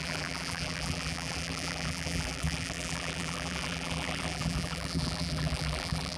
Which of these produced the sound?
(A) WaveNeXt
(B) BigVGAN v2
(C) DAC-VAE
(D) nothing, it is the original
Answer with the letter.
B